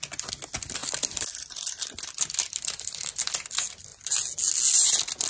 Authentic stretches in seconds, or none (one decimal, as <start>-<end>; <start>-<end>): 0.0-0.8; 3.3-5.3